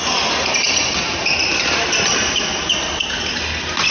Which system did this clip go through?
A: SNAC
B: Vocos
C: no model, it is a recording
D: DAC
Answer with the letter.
C